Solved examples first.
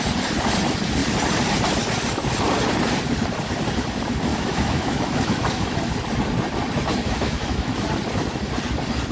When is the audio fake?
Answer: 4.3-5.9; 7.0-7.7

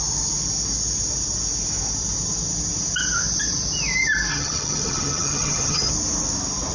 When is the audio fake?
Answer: 4.3-5.9

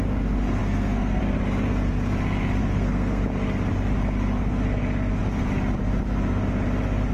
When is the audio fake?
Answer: 0.6-1.2; 2.6-3.2